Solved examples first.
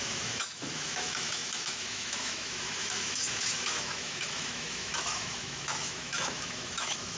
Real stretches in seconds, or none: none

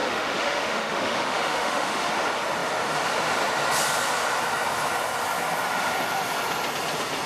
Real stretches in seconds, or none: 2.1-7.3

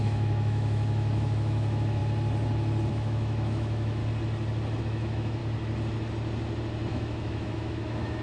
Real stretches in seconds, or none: 2.0-2.9; 4.0-4.8; 5.4-6.9